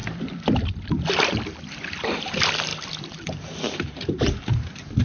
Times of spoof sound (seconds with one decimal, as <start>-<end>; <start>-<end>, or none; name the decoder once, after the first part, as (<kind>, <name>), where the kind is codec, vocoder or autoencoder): 0.0-1.3 (vocoder, BigVGAN v2); 2.7-5.0